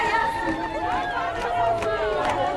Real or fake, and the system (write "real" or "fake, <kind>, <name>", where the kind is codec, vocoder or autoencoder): real